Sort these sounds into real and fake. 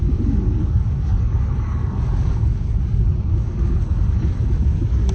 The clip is fake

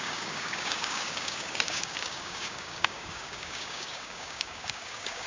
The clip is fake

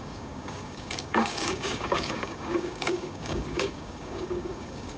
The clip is fake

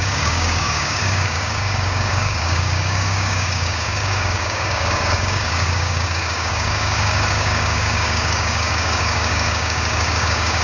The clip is fake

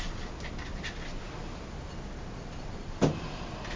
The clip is real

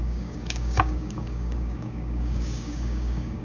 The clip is fake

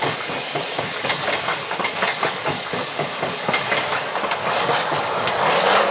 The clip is fake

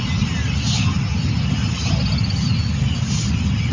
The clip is real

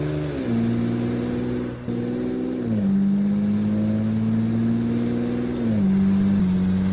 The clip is real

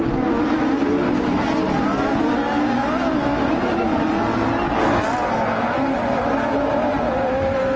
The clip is real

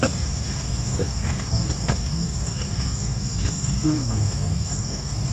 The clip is fake